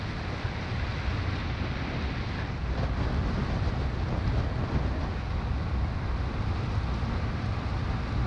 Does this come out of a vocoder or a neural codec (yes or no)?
no